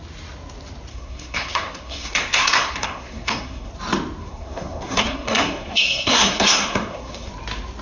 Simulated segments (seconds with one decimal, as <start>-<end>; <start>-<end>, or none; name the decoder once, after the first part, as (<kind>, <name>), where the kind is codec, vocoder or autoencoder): 0.9-3.7 (codec, SNAC); 4.2-7.3